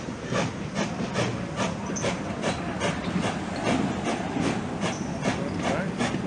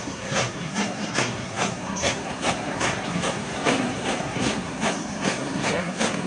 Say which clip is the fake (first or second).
second